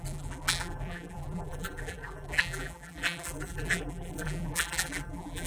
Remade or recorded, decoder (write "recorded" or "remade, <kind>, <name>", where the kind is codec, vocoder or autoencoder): remade, vocoder, BigVGAN v2